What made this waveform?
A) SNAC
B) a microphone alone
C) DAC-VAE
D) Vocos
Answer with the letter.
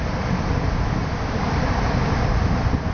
B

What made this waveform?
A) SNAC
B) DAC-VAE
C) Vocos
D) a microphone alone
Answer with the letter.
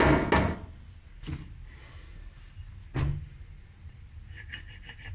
D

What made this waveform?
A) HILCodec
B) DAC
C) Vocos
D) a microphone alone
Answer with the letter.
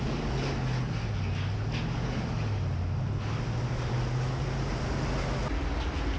D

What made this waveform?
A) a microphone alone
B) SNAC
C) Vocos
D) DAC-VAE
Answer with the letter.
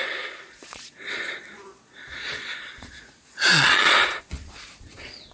C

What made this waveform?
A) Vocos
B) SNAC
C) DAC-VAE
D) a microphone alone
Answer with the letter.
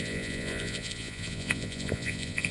A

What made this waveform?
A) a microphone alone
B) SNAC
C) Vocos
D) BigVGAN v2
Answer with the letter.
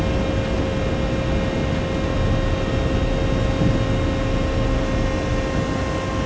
A